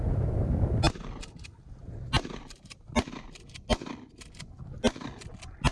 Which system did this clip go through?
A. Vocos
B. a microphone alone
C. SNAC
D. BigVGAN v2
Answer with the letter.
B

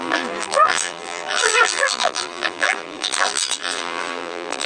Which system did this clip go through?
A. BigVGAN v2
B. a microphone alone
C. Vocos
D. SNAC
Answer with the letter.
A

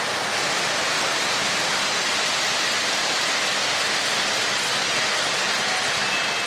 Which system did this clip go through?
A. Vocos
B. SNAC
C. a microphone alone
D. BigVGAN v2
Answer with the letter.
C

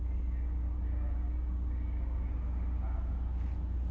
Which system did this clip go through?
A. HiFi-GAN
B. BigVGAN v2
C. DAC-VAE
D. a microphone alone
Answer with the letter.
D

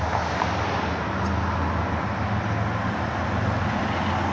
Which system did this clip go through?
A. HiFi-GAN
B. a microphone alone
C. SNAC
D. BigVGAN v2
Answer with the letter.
B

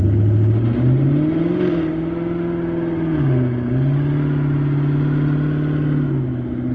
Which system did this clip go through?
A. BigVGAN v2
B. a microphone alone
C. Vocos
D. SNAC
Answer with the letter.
B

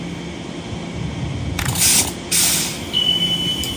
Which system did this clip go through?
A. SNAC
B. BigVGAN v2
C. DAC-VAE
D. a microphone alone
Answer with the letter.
D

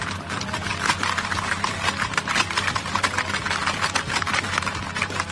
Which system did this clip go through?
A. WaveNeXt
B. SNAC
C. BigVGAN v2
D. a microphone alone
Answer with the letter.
D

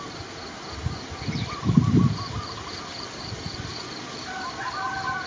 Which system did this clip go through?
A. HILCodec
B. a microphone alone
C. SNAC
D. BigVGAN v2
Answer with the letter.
B